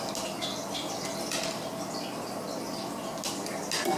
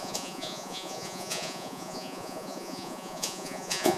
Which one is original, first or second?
first